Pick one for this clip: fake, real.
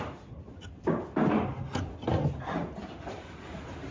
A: real